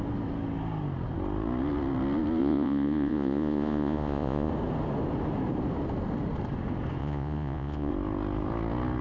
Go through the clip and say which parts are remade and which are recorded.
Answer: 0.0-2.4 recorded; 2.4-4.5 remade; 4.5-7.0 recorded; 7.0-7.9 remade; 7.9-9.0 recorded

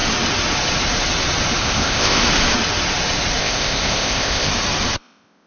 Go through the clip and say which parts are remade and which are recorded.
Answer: 0.0-1.6 recorded; 1.6-2.2 remade; 2.2-3.4 recorded; 3.4-4.5 remade; 4.5-5.5 recorded

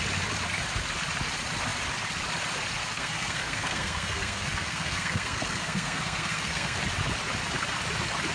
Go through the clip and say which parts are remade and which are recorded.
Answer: 0.0-2.8 recorded; 2.8-6.8 remade; 6.8-8.3 recorded